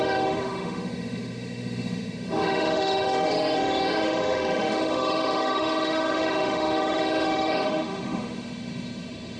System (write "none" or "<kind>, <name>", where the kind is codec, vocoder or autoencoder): autoencoder, DAC-VAE